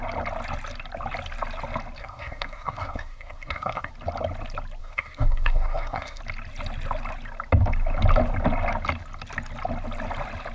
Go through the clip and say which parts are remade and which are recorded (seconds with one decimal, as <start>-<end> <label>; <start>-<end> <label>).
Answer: 0.0-2.0 recorded; 2.0-3.9 remade; 3.9-4.8 recorded; 4.8-6.2 remade; 6.2-10.5 recorded